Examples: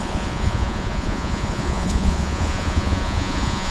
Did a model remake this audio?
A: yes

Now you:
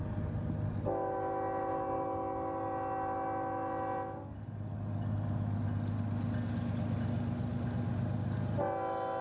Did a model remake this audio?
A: no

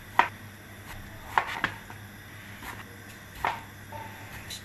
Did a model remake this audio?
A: no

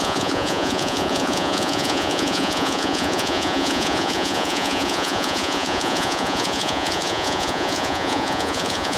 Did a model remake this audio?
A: yes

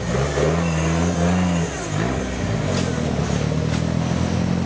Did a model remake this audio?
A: no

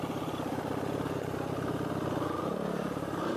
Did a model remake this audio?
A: no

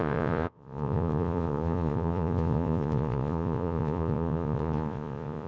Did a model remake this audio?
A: yes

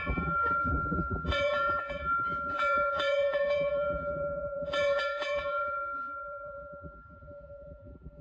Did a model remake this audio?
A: yes